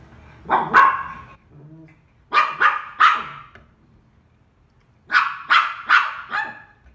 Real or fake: real